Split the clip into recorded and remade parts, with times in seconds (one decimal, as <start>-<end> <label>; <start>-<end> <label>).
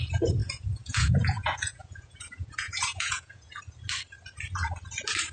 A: 0.0-0.4 recorded; 0.4-3.6 remade; 3.6-5.3 recorded